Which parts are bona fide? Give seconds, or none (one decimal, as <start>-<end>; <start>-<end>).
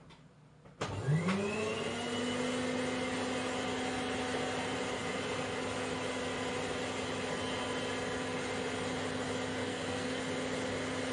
0.0-9.6; 10.2-11.1